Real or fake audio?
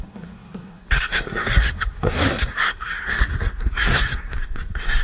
fake